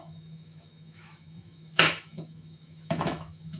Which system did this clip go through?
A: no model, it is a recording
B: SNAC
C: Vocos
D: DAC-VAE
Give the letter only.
D